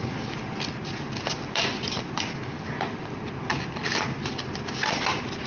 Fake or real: real